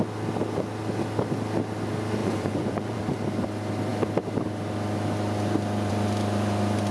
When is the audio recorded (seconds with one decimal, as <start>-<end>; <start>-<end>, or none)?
0.0-2.2; 3.0-6.9